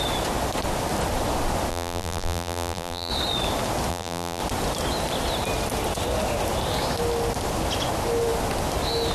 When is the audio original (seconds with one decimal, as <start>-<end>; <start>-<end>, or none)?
0.0-1.7; 3.1-3.9; 4.4-9.1